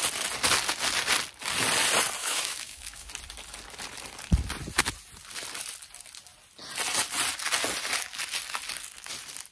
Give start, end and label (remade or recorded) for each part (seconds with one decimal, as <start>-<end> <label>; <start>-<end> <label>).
0.0-2.2 recorded; 2.2-3.1 remade; 3.1-9.5 recorded